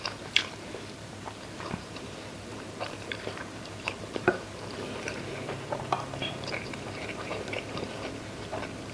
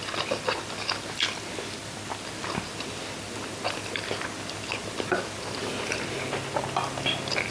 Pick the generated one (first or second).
first